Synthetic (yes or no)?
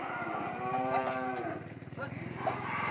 yes